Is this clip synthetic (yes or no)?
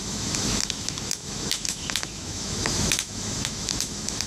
yes